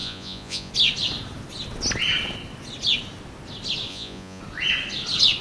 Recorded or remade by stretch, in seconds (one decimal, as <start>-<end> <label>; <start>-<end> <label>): 0.0-0.7 remade; 0.7-3.9 recorded; 3.9-4.4 remade; 4.4-5.4 recorded